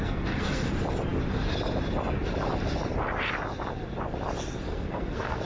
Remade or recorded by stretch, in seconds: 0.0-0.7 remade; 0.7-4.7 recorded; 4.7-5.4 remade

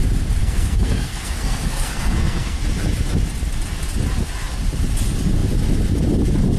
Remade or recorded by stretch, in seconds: 0.0-0.4 recorded; 0.4-2.6 remade; 2.6-6.6 recorded